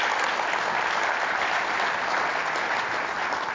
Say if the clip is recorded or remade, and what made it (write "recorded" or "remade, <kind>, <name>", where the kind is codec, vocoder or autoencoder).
recorded